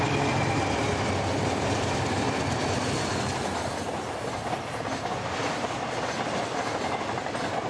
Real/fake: fake